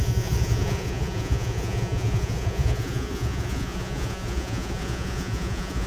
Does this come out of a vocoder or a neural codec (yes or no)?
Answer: yes